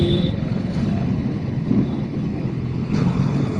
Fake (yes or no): yes